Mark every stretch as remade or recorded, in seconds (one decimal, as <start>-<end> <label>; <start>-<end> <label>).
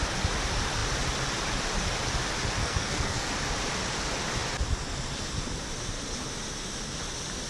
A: 0.0-2.6 recorded; 2.6-3.3 remade; 3.3-7.5 recorded